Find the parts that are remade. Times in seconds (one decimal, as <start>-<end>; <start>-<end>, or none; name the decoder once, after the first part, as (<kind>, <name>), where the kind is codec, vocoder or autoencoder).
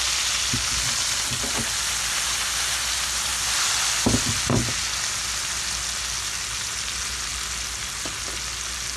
none